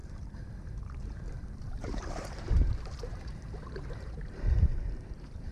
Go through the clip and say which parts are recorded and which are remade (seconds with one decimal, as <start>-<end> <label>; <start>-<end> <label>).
0.0-5.5 remade